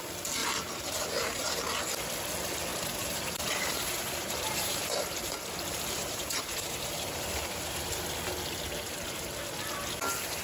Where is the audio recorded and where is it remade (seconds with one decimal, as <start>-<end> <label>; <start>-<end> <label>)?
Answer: 0.0-0.4 recorded; 0.4-1.6 remade; 1.6-2.7 recorded; 2.7-5.3 remade; 5.3-6.0 recorded; 6.0-7.9 remade; 7.9-10.4 recorded